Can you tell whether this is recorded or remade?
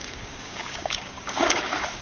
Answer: remade